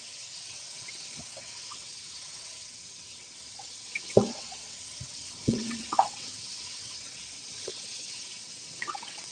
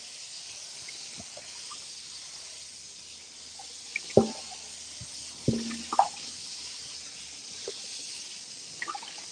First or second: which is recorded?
second